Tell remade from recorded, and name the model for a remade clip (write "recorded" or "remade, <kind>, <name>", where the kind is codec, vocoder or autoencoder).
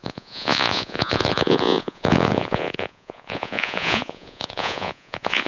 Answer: remade, vocoder, Vocos